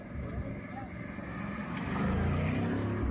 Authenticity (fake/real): real